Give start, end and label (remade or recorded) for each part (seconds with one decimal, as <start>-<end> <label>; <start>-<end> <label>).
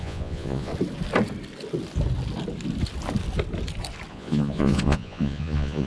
0.0-0.7 remade; 0.7-4.1 recorded; 4.1-5.9 remade